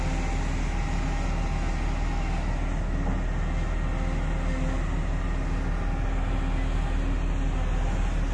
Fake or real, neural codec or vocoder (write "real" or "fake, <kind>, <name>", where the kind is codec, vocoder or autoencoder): real